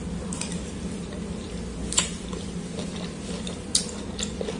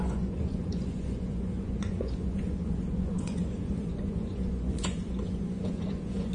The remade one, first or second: second